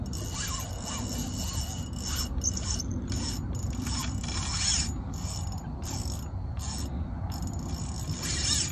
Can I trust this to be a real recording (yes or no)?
yes